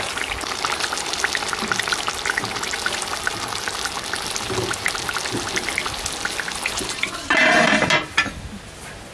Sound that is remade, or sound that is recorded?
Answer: recorded